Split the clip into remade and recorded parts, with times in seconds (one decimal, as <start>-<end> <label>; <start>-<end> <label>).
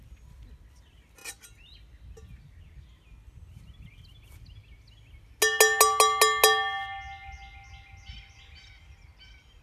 0.0-9.6 recorded